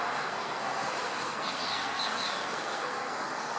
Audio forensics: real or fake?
fake